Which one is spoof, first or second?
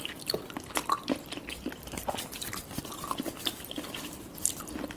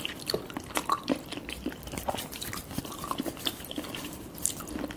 second